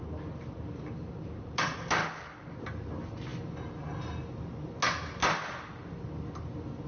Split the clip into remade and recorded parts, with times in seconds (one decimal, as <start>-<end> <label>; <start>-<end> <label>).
0.0-6.9 recorded

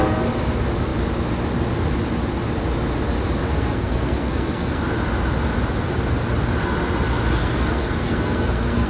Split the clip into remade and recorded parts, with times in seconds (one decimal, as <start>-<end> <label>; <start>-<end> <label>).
0.0-3.5 recorded; 3.5-4.8 remade; 4.8-7.4 recorded; 7.4-8.9 remade

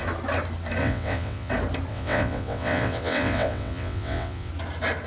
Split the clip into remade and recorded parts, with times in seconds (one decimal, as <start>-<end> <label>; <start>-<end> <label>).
0.0-0.8 recorded; 0.8-1.5 remade; 1.5-1.9 recorded; 1.9-4.5 remade; 4.5-5.1 recorded

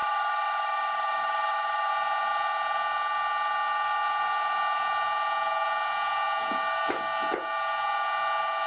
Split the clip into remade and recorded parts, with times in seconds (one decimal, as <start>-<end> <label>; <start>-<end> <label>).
0.0-1.9 remade; 1.9-8.7 recorded

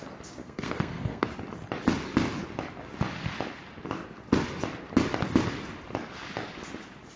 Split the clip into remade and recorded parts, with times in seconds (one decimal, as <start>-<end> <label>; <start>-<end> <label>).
0.0-0.4 recorded; 0.4-1.3 remade; 1.3-7.2 recorded